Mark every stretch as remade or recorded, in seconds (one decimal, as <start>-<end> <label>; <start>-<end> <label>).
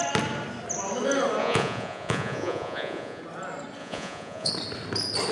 0.0-1.4 recorded; 1.4-3.2 remade; 3.2-3.8 recorded; 3.8-4.5 remade; 4.5-5.3 recorded